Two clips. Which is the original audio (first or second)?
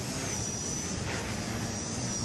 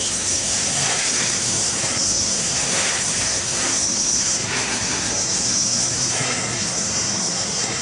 first